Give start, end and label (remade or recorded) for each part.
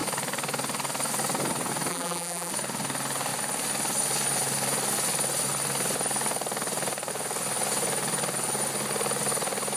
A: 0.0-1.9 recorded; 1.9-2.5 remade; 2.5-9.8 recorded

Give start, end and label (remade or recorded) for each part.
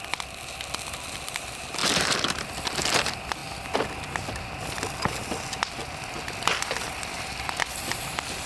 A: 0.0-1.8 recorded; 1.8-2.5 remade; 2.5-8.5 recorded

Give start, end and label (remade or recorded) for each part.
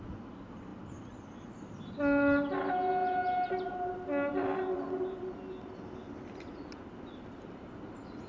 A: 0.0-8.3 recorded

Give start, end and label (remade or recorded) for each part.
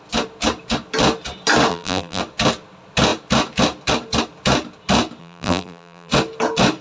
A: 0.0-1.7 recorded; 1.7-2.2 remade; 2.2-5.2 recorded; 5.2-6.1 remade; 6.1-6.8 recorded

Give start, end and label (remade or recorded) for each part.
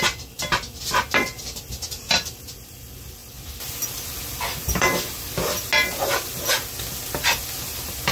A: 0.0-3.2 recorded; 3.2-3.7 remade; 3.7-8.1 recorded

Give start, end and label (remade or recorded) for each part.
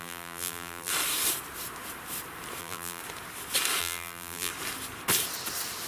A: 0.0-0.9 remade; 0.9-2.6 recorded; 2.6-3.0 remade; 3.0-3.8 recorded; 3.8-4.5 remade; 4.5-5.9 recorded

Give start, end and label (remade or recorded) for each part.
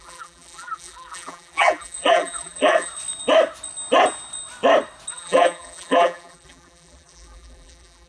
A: 0.0-2.9 remade; 2.9-5.1 recorded; 5.1-8.1 remade